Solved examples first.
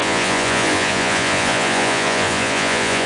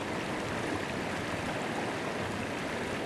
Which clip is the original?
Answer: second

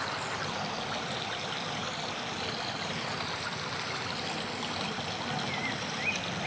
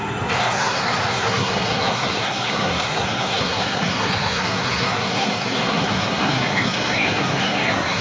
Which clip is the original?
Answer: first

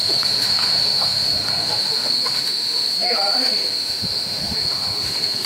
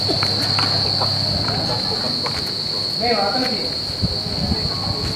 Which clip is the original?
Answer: second